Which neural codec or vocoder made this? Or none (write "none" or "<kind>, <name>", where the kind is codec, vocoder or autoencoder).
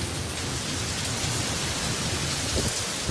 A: none